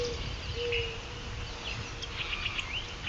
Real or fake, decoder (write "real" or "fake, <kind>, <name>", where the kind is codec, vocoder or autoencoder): real